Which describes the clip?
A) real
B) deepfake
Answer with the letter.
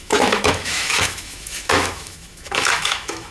B